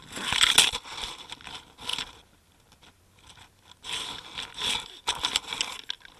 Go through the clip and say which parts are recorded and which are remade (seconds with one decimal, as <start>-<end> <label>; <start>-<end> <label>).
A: 0.0-6.2 recorded